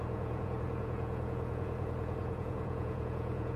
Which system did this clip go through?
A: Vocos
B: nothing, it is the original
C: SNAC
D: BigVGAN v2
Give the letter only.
A